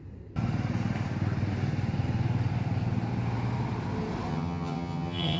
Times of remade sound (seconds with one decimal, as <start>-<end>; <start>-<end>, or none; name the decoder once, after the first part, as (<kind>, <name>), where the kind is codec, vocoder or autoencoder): 4.3-5.4 (vocoder, HiFi-GAN)

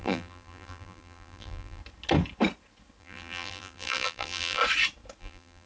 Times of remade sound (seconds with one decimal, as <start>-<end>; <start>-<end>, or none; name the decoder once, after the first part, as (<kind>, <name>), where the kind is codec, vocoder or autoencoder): 0.0-1.8 (vocoder, BigVGAN v2); 3.0-4.6; 5.2-5.7